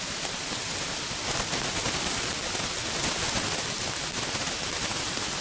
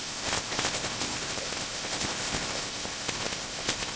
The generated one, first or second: second